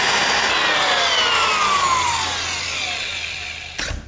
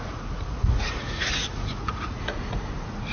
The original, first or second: first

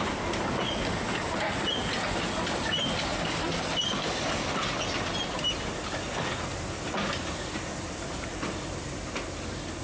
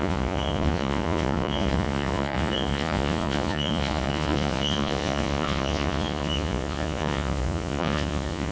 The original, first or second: first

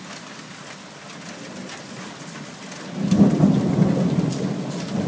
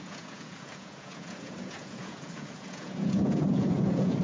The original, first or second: first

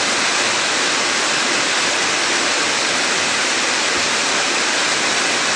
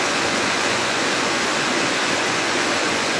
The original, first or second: first